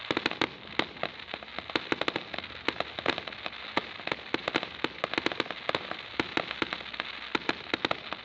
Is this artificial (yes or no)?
no